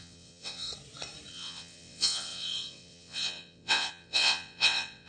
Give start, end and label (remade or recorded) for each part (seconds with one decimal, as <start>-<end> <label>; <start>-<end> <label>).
0.0-0.7 remade; 0.7-1.3 recorded; 1.3-5.1 remade